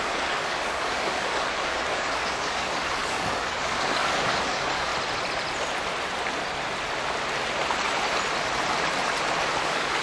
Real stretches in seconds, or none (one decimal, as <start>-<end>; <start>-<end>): 4.9-9.6